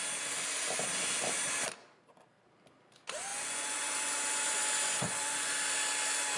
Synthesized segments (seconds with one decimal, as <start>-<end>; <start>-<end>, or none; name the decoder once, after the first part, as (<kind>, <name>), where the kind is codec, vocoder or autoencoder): 3.3-5.5 (vocoder, Vocos)